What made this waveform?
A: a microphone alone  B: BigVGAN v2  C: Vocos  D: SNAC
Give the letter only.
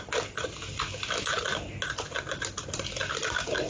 A